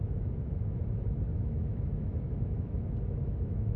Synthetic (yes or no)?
yes